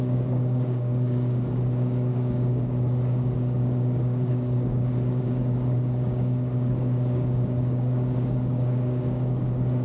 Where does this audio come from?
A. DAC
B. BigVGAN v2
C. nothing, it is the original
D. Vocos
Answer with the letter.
A